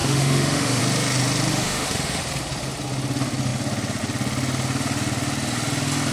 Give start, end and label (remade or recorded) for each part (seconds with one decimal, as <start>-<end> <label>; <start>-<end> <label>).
0.0-0.8 remade; 0.8-1.5 recorded; 1.5-2.2 remade; 2.2-6.1 recorded